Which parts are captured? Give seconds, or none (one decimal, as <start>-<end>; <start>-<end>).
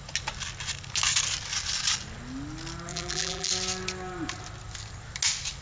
0.0-2.9; 3.5-5.6